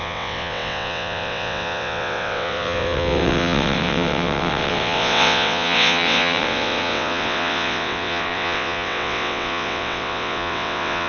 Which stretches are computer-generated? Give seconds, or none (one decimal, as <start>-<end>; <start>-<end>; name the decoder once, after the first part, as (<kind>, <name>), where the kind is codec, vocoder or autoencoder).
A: 0.0-11.1 (vocoder, WaveNeXt)